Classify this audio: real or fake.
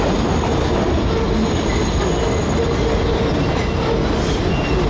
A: real